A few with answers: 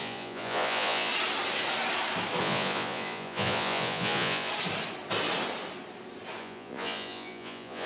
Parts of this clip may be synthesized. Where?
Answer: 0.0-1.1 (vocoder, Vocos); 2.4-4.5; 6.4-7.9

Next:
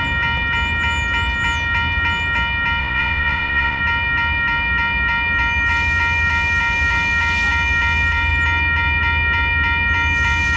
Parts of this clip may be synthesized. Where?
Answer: 2.8-3.8 (vocoder, Vocos)

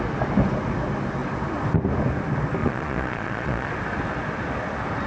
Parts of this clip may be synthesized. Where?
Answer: 2.6-3.7 (vocoder, Vocos)

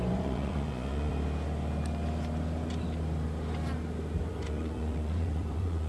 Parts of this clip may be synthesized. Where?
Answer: 0.0-1.1 (vocoder, Vocos); 4.3-5.9

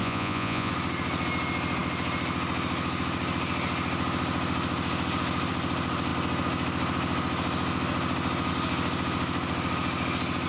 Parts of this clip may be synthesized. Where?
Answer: 0.0-0.7 (vocoder, Vocos)

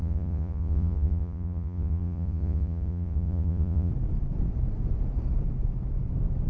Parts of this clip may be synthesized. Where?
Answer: 0.0-3.9 (vocoder, Vocos)

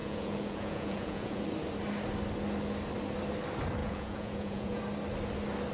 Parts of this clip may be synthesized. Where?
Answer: 0.0-1.4 (vocoder, Vocos); 3.8-4.8

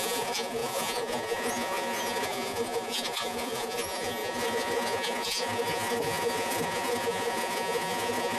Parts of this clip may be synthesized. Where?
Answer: 0.0-8.4 (vocoder, Vocos)